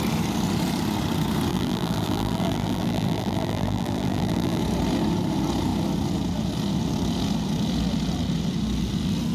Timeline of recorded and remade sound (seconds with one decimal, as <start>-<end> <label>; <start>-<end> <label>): 0.0-1.5 recorded; 1.5-4.6 remade; 4.6-9.3 recorded